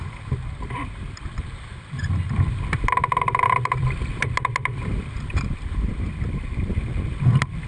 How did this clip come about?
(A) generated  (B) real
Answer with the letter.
A